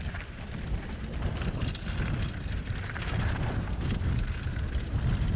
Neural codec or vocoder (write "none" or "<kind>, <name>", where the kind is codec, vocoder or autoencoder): none